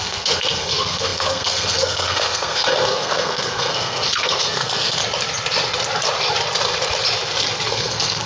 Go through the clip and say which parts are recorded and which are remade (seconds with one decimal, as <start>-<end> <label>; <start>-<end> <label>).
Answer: 0.0-5.0 remade; 5.0-7.7 recorded; 7.7-8.3 remade